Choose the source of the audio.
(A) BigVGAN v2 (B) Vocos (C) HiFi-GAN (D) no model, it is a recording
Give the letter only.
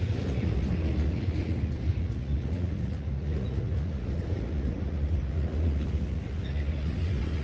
B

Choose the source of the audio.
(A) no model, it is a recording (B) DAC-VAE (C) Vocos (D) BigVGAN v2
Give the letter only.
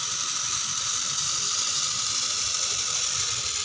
A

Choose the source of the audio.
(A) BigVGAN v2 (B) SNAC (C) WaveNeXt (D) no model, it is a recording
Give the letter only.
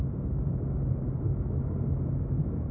D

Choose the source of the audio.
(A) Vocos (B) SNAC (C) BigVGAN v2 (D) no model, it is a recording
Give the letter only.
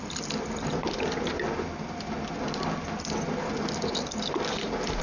D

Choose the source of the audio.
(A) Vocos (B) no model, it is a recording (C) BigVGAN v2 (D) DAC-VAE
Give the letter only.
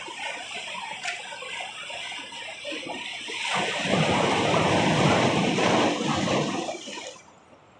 B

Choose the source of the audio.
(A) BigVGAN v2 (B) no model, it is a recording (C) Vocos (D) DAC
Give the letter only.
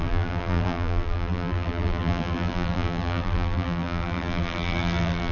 A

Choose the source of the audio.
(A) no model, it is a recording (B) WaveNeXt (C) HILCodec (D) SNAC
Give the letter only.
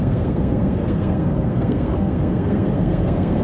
D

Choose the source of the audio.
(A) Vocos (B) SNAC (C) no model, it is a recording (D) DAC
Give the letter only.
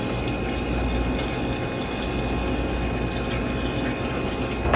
C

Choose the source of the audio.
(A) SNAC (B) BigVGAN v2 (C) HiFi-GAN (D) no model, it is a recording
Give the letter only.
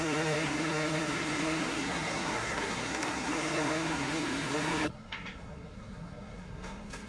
A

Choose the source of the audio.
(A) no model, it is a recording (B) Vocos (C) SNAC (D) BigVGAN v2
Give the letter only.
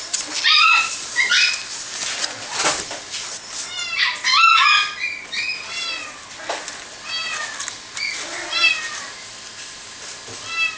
A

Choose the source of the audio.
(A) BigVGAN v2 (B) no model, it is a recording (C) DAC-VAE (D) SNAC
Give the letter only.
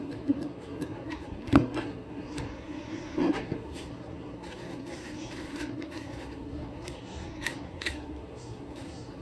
D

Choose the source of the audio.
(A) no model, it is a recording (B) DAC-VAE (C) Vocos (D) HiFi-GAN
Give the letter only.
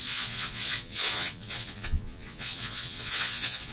C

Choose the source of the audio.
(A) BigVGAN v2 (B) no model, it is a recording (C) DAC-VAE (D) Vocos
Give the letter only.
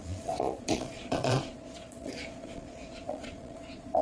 D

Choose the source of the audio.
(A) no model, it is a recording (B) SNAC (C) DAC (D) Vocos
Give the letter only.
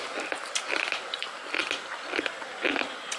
A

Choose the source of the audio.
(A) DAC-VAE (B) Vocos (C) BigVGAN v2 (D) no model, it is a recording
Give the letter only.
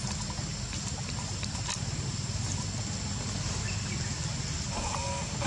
D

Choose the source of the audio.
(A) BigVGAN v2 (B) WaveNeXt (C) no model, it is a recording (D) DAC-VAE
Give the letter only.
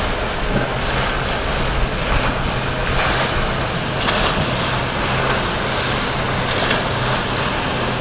C